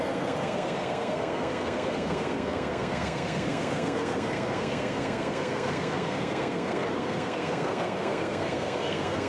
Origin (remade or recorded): remade